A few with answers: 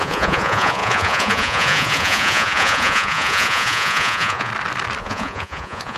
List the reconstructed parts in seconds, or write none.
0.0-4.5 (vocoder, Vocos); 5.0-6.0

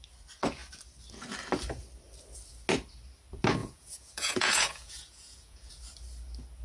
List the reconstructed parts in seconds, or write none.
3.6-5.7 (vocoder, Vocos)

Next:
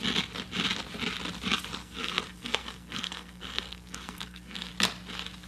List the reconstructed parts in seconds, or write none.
1.8-4.7 (codec, SNAC)

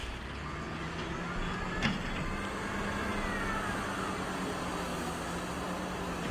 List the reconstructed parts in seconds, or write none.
none

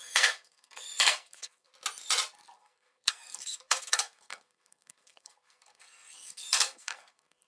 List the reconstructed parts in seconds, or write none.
0.0-1.7 (codec, SNAC); 2.5-7.5

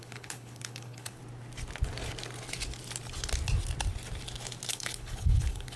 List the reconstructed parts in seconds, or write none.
0.0-1.2 (codec, HILCodec); 4.7-5.8

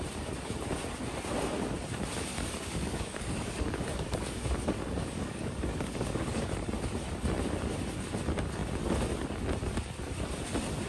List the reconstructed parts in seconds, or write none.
2.3-6.7 (codec, DAC)

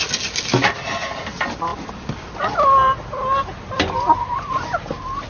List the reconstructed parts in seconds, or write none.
none